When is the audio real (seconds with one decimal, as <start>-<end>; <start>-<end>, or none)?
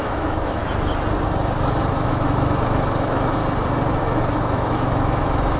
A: 0.6-1.9; 3.4-4.0